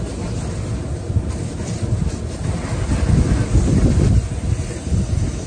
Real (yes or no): yes